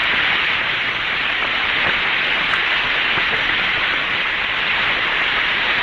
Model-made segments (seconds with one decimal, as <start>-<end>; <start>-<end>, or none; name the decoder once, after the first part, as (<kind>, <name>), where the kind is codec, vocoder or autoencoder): none